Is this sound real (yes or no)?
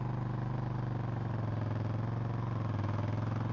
yes